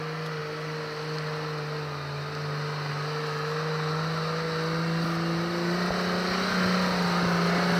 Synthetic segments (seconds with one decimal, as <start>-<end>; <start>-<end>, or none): none

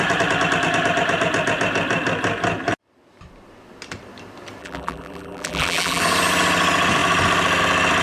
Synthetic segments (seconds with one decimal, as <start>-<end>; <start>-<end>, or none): 4.6-6.0

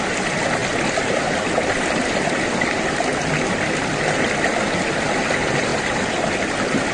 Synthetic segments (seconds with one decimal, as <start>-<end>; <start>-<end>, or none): none

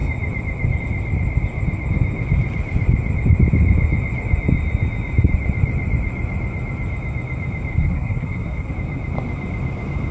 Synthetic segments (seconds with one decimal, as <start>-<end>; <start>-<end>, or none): 7.7-8.7

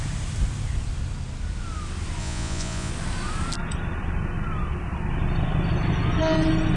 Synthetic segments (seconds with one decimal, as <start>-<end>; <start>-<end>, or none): 2.2-2.9